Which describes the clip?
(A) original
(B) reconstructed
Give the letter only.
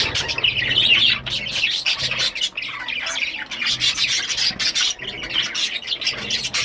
A